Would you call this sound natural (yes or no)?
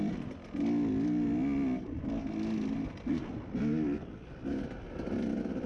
yes